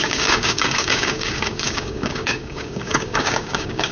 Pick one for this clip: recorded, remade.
remade